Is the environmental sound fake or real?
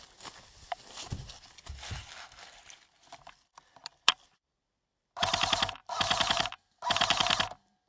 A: real